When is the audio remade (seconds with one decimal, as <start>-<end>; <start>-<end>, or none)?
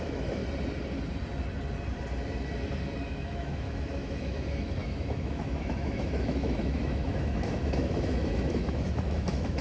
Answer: 0.0-0.4; 3.1-9.6